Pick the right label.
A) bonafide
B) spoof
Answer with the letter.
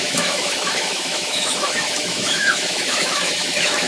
B